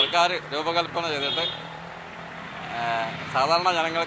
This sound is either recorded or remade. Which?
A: recorded